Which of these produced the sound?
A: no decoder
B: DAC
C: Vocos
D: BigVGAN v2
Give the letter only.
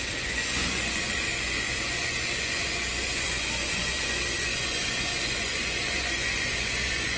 C